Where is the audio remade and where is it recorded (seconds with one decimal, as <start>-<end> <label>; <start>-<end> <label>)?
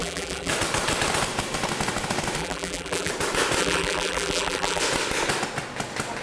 0.0-0.5 remade; 0.5-2.4 recorded; 2.4-3.1 remade; 3.1-3.6 recorded; 3.6-4.8 remade; 4.8-6.2 recorded